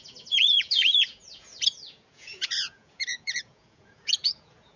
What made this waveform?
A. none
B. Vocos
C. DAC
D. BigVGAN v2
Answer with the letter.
B